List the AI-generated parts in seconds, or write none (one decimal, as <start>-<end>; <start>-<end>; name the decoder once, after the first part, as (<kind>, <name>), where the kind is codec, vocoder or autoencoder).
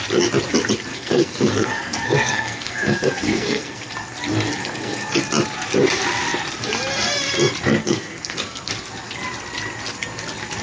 0.9-3.9 (codec, SNAC); 4.6-5.2; 7.8-8.7